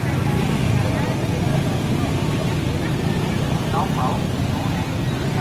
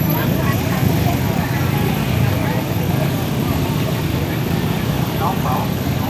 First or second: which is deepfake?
second